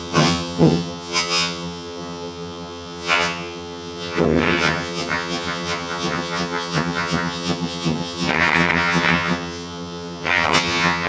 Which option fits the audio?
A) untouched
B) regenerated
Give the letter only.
B